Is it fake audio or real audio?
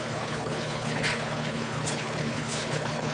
fake